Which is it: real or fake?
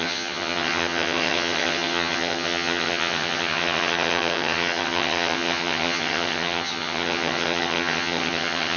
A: fake